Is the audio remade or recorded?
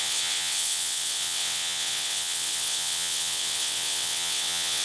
remade